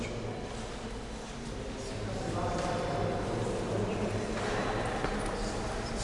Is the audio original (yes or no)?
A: yes